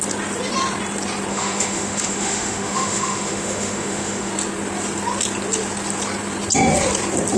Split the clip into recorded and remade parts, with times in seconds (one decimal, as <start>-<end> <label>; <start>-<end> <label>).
0.0-1.3 recorded; 1.3-4.3 remade; 4.3-7.4 recorded